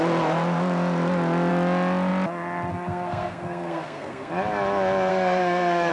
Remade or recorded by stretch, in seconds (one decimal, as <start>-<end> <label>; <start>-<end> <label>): 0.0-2.7 recorded; 2.7-4.3 remade; 4.3-5.1 recorded; 5.1-5.9 remade